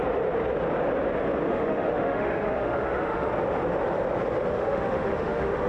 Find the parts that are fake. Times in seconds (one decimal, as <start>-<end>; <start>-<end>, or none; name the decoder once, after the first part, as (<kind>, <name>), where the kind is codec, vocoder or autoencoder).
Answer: 1.5-3.3 (autoencoder, DAC-VAE); 4.5-5.7